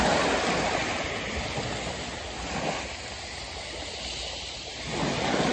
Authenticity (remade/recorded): recorded